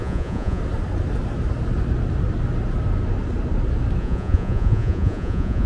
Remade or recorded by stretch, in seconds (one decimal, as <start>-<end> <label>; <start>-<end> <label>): 0.0-0.6 remade; 0.6-4.0 recorded; 4.0-5.7 remade